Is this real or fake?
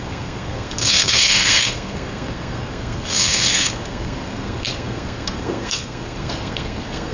fake